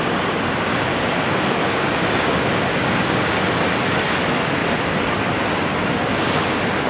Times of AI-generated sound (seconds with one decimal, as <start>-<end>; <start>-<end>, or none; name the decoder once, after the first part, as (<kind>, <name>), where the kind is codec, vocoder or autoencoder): 0.9-3.4 (codec, DAC); 5.7-6.5